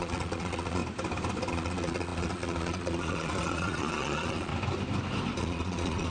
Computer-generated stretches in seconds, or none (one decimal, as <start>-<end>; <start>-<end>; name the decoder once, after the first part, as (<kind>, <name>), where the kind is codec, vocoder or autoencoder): 0.0-0.8 (vocoder, Vocos); 1.5-4.5; 5.4-6.1